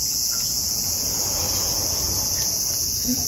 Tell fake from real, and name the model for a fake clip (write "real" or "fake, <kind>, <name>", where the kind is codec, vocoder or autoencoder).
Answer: fake, vocoder, Vocos